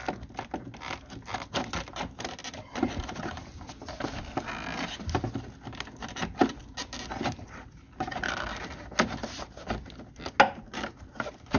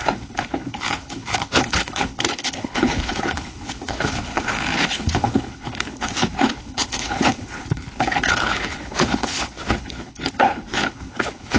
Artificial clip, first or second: second